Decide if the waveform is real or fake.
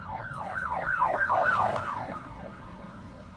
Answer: fake